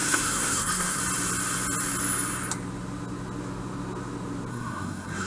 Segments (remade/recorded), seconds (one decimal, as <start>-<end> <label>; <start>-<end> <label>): 0.0-1.0 remade; 1.0-4.5 recorded; 4.5-5.3 remade